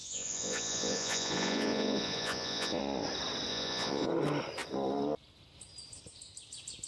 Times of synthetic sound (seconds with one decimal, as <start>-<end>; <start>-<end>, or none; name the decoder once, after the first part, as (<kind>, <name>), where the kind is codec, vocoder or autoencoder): 0.0-2.8 (vocoder, Vocos); 3.5-4.1